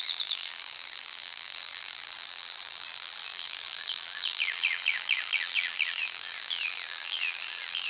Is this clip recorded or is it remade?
remade